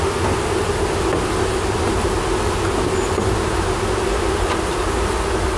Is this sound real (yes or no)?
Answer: yes